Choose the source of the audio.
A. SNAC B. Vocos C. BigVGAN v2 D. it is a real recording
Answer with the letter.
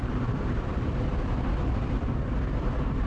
C